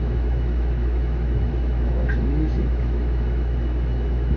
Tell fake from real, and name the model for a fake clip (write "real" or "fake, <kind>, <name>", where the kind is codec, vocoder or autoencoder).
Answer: fake, autoencoder, DAC-VAE